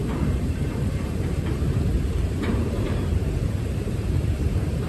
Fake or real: fake